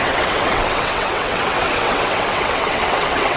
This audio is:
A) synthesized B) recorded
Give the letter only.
A